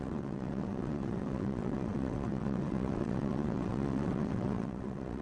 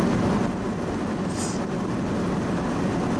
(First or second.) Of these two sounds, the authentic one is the second